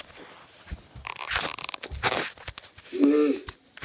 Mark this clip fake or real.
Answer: real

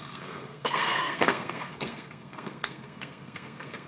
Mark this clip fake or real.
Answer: fake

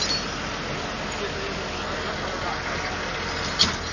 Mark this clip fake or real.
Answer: real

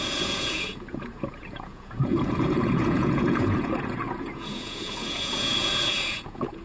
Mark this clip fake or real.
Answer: fake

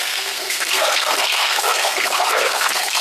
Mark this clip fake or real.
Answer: fake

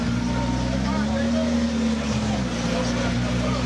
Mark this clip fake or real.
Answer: real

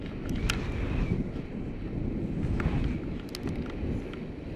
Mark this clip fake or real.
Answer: real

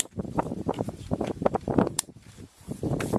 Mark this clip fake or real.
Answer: fake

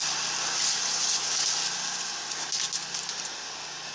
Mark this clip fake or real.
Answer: real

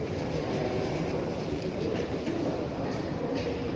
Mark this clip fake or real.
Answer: fake